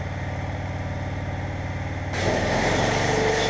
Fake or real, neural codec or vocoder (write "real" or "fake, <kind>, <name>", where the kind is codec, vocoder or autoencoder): real